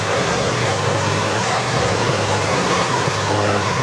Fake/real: fake